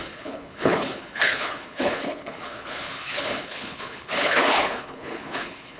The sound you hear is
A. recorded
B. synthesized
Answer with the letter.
B